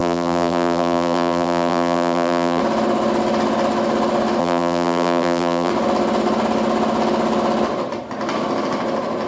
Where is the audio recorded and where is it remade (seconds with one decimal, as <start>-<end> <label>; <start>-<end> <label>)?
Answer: 0.0-2.6 remade; 2.6-4.4 recorded; 4.4-5.7 remade; 5.7-9.3 recorded